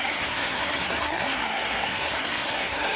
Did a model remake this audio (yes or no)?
yes